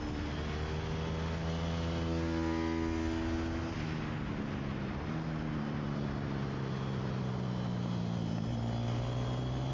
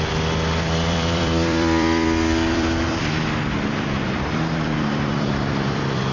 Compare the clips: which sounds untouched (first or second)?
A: first